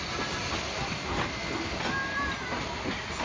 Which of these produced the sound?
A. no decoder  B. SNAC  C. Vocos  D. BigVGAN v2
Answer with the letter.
A